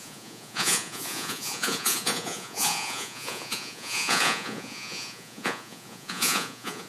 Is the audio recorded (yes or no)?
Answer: no